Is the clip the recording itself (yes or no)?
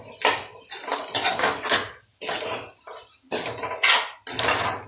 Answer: yes